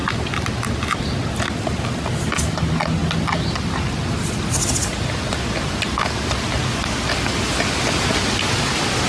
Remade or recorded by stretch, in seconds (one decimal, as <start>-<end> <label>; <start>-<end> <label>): 0.0-9.1 recorded